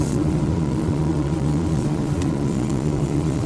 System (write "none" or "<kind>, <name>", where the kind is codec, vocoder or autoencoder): vocoder, Vocos